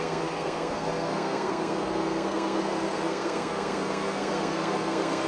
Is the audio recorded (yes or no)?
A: no